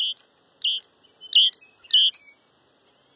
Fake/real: real